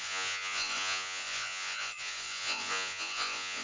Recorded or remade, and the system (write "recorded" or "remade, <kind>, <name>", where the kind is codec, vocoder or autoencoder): remade, vocoder, Vocos